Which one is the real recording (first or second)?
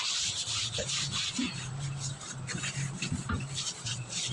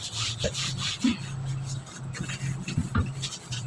second